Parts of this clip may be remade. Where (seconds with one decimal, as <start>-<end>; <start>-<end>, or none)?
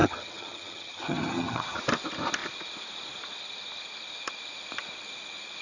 0.0-1.8